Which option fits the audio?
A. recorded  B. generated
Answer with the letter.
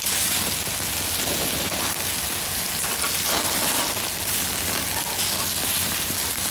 A